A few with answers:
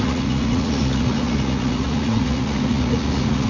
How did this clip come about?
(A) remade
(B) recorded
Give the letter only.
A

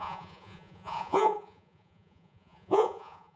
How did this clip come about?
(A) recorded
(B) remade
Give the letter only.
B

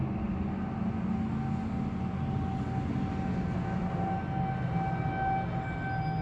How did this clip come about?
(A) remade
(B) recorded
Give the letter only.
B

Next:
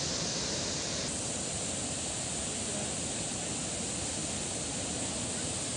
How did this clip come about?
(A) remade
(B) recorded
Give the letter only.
B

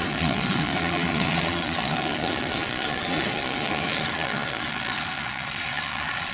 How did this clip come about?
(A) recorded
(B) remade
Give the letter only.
B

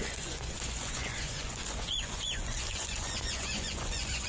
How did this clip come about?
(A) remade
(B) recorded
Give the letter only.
A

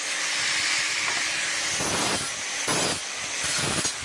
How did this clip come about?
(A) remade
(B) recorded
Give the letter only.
B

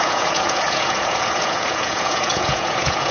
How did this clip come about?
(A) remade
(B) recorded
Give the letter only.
A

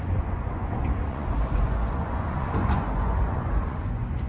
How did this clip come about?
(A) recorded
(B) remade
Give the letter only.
B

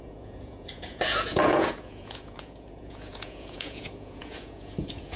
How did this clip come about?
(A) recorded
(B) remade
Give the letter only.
B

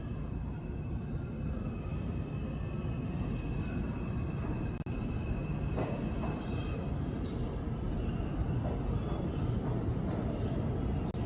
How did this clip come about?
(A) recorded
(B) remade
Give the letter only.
A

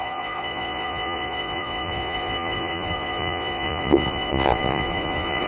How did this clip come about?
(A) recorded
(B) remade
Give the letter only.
B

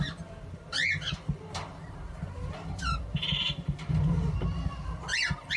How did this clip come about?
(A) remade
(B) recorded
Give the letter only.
B